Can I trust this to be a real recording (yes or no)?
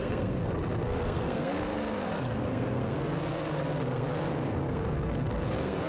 no